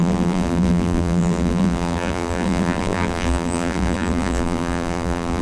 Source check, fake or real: fake